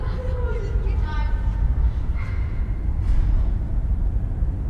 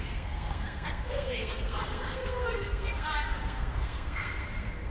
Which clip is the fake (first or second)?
second